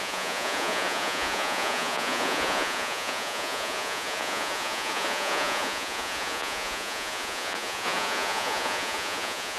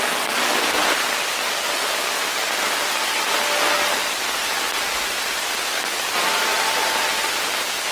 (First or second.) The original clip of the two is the second